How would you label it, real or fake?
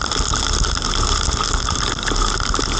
real